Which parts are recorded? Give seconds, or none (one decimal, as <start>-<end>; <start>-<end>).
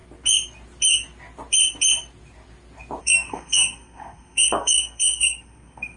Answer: 0.0-3.0